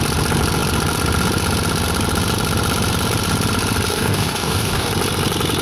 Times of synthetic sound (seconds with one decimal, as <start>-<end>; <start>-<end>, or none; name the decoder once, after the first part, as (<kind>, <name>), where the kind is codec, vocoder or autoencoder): 3.9-4.9 (codec, DAC)